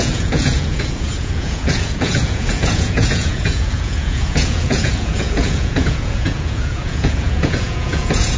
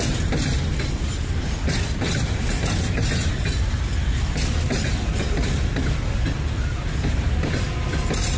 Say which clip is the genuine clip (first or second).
second